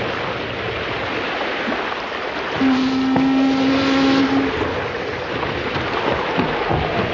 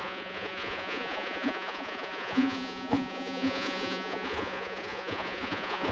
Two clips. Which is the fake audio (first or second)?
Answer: second